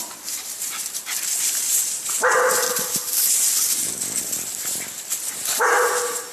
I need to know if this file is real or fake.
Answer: fake